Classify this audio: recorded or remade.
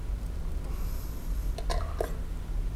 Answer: recorded